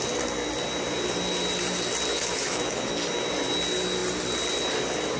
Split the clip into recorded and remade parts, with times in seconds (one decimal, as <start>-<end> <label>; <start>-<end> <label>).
0.0-2.1 recorded; 2.1-2.9 remade; 2.9-5.2 recorded